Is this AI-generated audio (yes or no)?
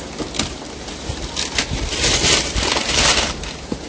no